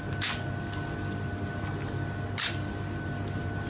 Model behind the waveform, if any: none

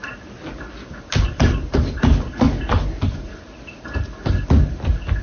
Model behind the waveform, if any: none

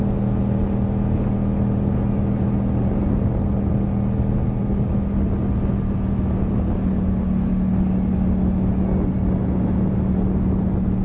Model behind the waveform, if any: none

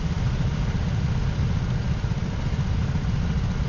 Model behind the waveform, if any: none